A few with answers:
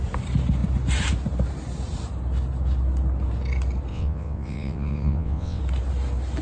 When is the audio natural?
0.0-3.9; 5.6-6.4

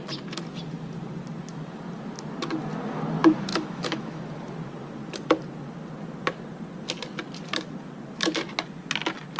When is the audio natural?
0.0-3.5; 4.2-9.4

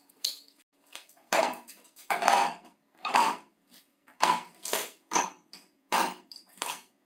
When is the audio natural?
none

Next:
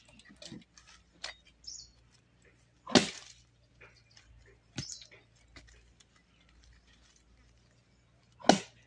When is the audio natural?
0.0-8.9

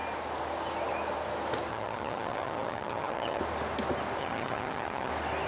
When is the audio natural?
0.0-1.7; 3.4-4.2; 5.1-5.5